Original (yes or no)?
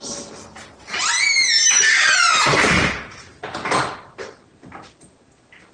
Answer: yes